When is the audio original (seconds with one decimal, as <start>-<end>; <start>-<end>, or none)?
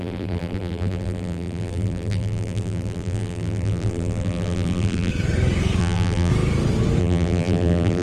5.1-5.8; 6.3-7.0